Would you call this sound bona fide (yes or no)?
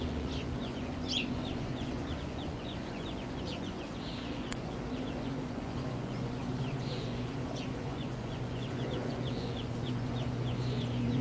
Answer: no